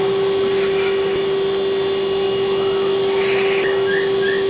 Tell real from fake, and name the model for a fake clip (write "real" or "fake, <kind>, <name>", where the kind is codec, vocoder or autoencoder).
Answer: real